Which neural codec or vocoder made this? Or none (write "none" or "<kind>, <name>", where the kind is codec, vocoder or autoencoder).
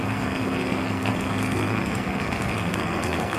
codec, SNAC